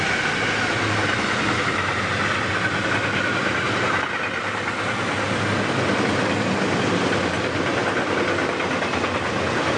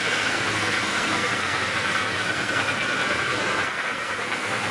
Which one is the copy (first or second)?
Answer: second